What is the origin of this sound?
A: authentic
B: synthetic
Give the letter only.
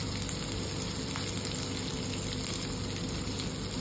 A